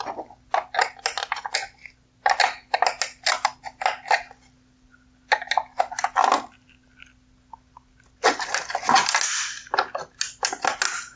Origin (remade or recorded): recorded